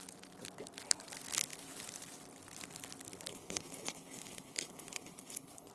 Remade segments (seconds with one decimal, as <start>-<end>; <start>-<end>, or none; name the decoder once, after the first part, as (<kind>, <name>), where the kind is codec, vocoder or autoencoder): 3.3-5.7 (codec, HILCodec)